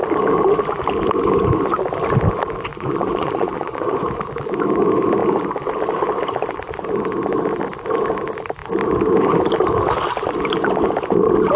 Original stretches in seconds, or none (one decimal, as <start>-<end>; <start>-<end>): 0.0-2.7; 4.1-11.6